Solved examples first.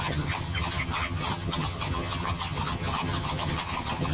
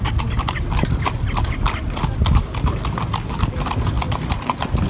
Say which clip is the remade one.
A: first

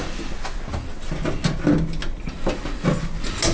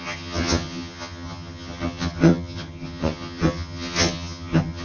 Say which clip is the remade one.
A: second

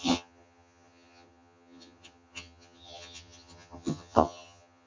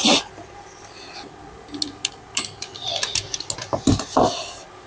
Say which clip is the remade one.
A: first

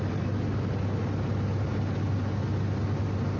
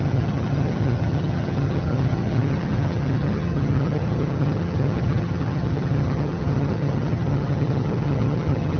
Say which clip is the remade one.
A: second